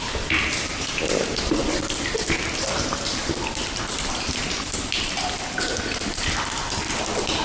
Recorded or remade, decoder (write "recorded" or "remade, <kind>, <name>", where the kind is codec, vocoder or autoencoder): recorded